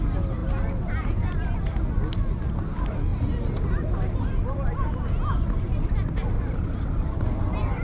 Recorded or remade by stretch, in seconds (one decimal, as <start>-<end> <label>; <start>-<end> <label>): 0.0-7.8 recorded